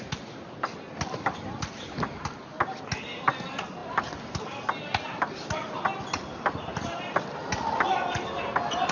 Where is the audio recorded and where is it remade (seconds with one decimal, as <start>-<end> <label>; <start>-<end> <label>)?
0.0-8.9 recorded